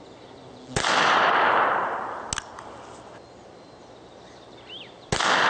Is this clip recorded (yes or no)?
yes